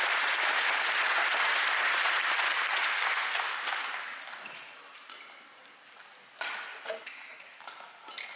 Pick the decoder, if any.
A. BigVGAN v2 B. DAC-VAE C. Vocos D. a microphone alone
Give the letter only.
D